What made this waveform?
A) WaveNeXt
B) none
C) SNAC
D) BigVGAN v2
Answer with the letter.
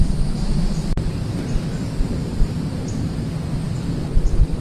D